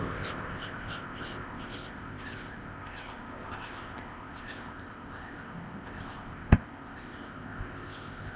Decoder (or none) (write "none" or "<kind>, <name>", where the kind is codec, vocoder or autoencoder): codec, ZipCodec